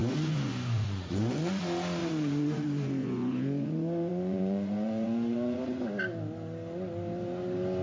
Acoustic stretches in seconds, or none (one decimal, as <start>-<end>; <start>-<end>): 1.6-2.0; 5.6-7.8